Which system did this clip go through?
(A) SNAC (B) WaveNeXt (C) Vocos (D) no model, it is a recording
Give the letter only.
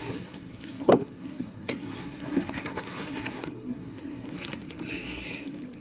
A